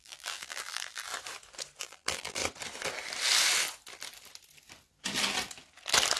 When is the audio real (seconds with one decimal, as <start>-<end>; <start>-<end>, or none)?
1.1-1.8; 2.4-6.2